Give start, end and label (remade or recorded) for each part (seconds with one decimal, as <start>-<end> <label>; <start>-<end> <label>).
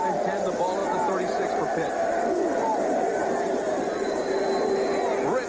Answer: 0.0-0.8 recorded; 0.8-2.1 remade; 2.1-2.7 recorded; 2.7-4.3 remade; 4.3-5.5 recorded